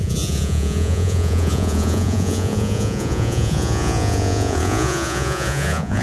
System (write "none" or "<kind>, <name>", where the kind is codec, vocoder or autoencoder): vocoder, Vocos